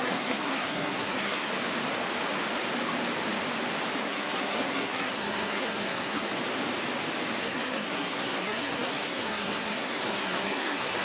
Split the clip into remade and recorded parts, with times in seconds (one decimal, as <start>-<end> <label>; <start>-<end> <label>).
0.0-1.5 remade; 1.5-4.0 recorded; 4.0-6.3 remade; 6.3-7.4 recorded; 7.4-11.0 remade